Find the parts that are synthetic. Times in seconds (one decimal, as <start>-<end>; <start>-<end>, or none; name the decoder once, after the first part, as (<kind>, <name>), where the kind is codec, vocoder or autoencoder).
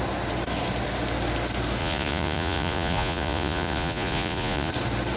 1.8-4.7 (vocoder, Vocos)